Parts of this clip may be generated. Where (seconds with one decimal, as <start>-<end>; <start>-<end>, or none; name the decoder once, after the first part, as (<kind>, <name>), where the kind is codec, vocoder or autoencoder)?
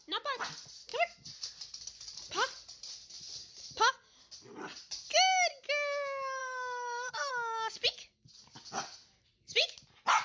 3.4-3.9 (codec, DAC); 6.4-7.3